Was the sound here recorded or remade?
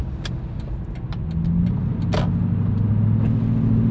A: recorded